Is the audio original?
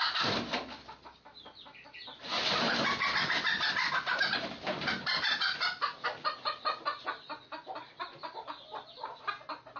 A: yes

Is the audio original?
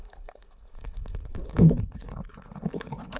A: no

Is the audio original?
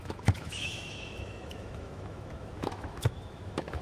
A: no